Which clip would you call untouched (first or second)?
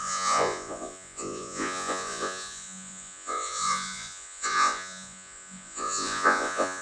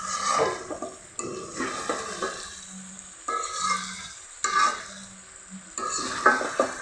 second